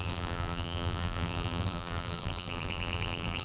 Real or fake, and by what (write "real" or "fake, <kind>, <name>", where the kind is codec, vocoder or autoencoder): fake, vocoder, BigVGAN v2